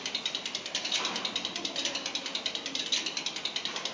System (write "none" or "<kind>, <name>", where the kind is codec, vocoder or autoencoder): none